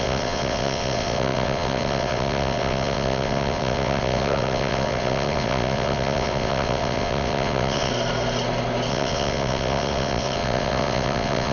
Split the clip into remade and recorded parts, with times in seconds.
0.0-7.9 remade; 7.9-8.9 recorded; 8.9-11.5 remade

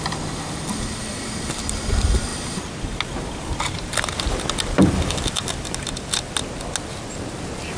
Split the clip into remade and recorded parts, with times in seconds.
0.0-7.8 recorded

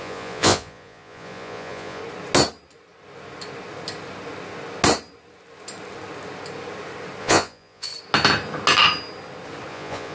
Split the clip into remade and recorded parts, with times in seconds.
0.0-2.0 remade; 2.0-7.2 recorded; 7.2-7.9 remade; 7.9-9.7 recorded; 9.7-10.1 remade

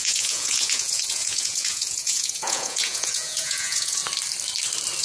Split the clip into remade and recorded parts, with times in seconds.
0.0-4.0 remade; 4.0-5.0 recorded

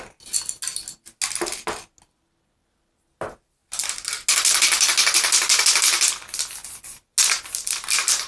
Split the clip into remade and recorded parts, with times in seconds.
0.0-8.3 recorded

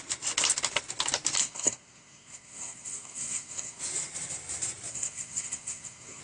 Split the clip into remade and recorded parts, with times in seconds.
0.0-1.4 recorded; 1.4-3.8 remade; 3.8-4.9 recorded; 4.9-6.2 remade